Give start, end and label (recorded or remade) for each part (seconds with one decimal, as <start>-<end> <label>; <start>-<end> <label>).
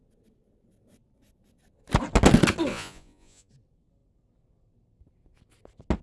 0.0-2.7 recorded; 2.7-3.5 remade; 3.5-6.0 recorded